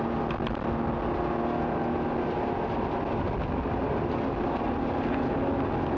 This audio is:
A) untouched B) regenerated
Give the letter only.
A